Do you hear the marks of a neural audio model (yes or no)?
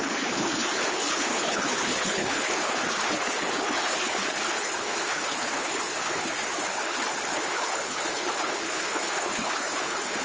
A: yes